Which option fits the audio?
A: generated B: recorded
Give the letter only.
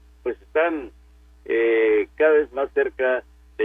A